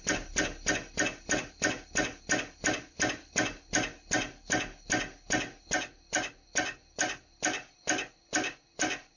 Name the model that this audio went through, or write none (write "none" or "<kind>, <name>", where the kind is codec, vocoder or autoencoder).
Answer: none